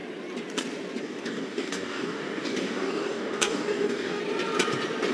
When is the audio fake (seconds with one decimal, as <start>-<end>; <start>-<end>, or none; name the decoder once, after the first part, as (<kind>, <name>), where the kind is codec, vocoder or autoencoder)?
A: 1.0-4.2 (codec, DAC)